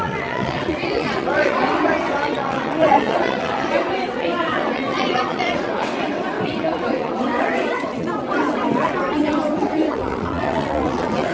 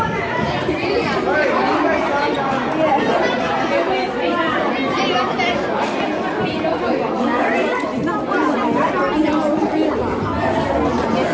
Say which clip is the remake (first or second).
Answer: first